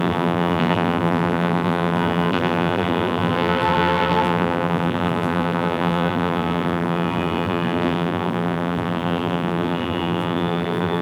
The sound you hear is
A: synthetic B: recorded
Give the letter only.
A